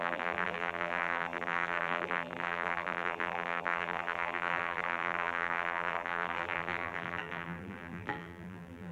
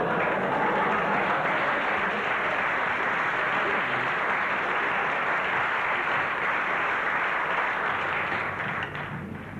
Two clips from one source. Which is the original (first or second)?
second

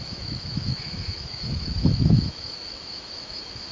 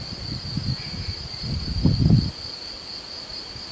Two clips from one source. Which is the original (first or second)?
second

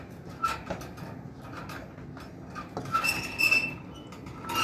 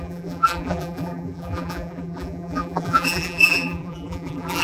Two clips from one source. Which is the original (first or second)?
first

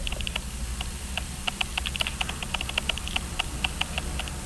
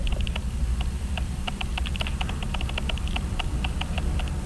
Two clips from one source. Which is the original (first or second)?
first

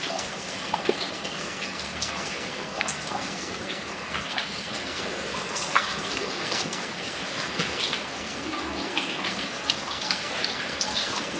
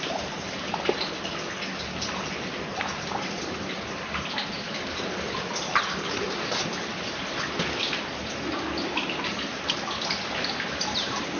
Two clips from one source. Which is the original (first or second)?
second